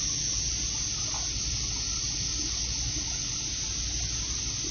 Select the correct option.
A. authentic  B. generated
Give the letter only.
A